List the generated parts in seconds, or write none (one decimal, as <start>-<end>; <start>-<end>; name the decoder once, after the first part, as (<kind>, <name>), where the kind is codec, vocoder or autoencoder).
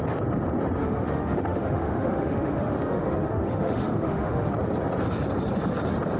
0.8-4.5 (autoencoder, DAC-VAE)